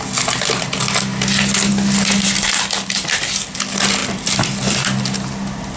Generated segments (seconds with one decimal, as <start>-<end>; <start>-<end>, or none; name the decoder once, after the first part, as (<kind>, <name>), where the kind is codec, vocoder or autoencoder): 4.0-5.0 (vocoder, BigVGAN v2)